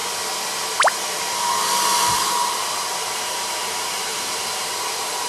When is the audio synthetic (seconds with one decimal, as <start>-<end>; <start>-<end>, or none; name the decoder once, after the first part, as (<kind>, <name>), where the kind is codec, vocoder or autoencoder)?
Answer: 1.9-5.3 (vocoder, BigVGAN v2)